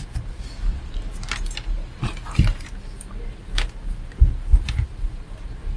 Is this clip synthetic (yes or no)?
no